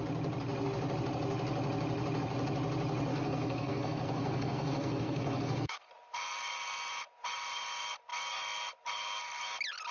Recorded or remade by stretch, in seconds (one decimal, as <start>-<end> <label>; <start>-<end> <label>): 0.0-3.1 recorded; 3.1-5.9 remade; 5.9-9.9 recorded